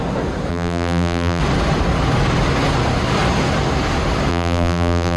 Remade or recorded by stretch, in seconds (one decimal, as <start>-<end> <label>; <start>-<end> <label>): 0.0-0.5 recorded; 0.5-1.4 remade; 1.4-4.3 recorded; 4.3-5.2 remade